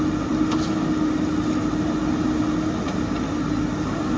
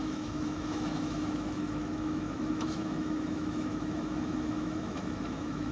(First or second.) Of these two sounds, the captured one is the first